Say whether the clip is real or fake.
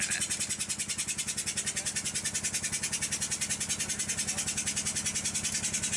real